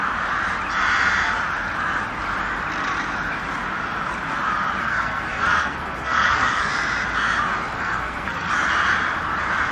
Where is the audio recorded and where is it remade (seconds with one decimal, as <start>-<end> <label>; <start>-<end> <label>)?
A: 0.0-4.8 recorded; 4.8-6.7 remade; 6.7-7.8 recorded; 7.8-8.5 remade; 8.5-9.7 recorded

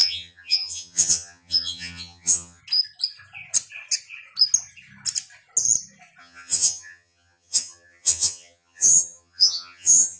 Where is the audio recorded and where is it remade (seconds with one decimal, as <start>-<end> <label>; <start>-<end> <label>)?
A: 0.0-2.6 remade; 2.6-6.2 recorded; 6.2-10.2 remade

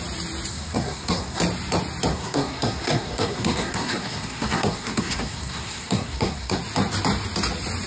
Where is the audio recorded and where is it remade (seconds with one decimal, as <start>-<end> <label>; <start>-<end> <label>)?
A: 0.0-0.5 recorded; 0.5-1.4 remade; 1.4-2.1 recorded; 2.1-6.6 remade; 6.6-7.9 recorded

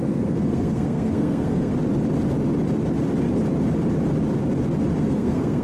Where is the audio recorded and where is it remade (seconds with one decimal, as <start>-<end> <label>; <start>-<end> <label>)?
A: 0.0-1.7 remade; 1.7-5.0 recorded; 5.0-5.6 remade

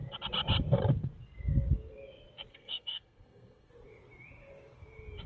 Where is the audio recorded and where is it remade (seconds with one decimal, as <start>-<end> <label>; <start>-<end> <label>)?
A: 0.0-2.5 recorded; 2.5-3.7 remade; 3.7-5.3 recorded

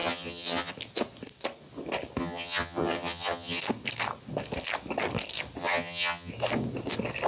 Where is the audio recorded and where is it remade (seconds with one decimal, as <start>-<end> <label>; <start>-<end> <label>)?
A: 0.0-0.7 remade; 0.7-2.2 recorded; 2.2-3.6 remade; 3.6-5.6 recorded; 5.6-6.3 remade; 6.3-7.3 recorded

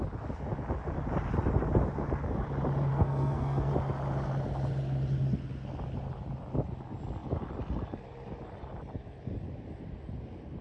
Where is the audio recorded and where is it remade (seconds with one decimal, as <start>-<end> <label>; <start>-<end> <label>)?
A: 0.0-2.9 recorded; 2.9-3.7 remade; 3.7-10.6 recorded

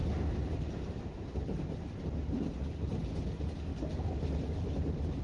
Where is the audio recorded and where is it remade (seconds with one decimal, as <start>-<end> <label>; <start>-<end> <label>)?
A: 0.0-2.0 remade; 2.0-5.2 recorded